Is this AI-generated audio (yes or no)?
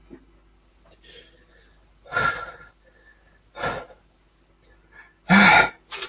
no